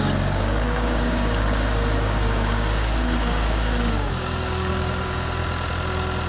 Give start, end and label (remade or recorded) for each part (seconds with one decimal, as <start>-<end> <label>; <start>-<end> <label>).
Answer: 0.0-5.4 remade; 5.4-6.3 recorded